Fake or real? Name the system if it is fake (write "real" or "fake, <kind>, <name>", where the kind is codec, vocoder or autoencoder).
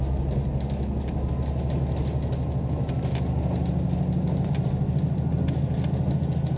real